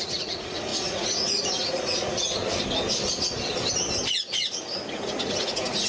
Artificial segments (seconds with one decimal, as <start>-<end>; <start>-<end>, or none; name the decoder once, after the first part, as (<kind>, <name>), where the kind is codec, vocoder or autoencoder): 0.0-2.4 (vocoder, Vocos); 4.9-5.9